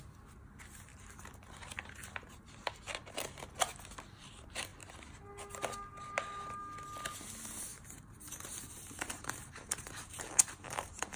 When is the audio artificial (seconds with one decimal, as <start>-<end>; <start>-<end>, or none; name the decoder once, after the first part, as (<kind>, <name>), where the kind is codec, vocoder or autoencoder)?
7.7-11.2 (vocoder, BigVGAN v2)